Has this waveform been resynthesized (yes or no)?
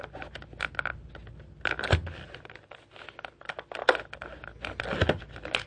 no